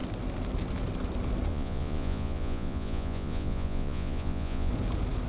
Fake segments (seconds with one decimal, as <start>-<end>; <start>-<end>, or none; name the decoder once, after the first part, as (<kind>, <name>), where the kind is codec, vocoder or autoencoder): 1.5-4.7 (vocoder, Vocos)

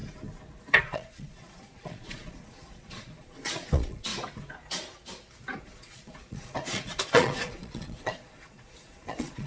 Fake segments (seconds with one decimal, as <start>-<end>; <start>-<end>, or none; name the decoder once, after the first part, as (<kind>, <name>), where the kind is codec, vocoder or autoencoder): 0.8-4.1 (vocoder, Vocos); 5.6-9.5

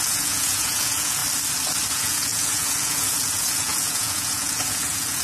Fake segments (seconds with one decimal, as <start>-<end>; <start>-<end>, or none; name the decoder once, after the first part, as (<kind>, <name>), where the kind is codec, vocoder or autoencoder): 0.0-1.2 (vocoder, Vocos); 1.9-5.2

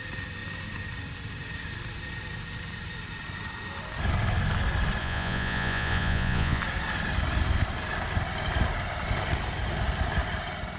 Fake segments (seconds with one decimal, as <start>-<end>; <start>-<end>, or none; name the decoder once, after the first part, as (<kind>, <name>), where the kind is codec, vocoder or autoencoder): 5.0-6.6 (vocoder, Vocos)

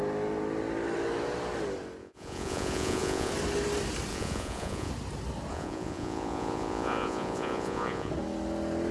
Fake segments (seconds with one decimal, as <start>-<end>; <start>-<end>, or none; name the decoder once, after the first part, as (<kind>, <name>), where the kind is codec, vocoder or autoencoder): 2.0-3.3 (vocoder, Vocos); 4.1-4.9; 5.5-8.1

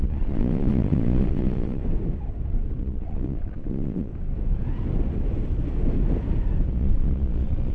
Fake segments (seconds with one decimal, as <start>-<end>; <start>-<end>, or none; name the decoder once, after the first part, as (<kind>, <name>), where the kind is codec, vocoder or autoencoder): 0.0-1.8 (vocoder, Vocos); 2.8-4.1; 6.7-7.7

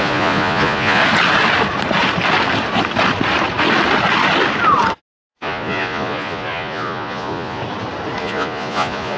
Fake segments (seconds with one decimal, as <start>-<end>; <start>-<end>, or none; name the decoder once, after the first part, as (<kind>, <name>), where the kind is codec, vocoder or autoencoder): 0.0-1.0 (vocoder, Vocos); 5.3-7.6; 8.2-9.2

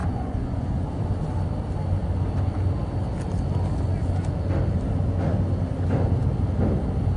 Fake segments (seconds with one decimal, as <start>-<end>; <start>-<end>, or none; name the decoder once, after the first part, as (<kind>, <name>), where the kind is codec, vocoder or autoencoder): 0.0-0.9 (vocoder, Vocos)